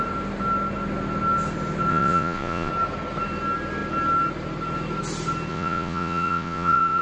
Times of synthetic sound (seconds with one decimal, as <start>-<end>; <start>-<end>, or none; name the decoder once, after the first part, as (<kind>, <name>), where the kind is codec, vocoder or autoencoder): 1.9-2.7 (vocoder, Vocos); 5.5-7.0